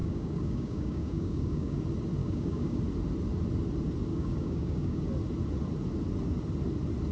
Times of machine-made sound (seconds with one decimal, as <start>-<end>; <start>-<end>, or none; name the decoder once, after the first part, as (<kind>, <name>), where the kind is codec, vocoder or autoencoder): 0.0-1.8 (codec, DAC); 2.2-2.8; 4.1-5.0